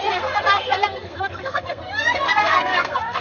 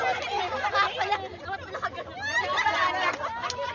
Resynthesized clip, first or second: first